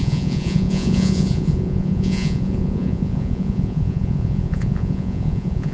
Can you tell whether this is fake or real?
fake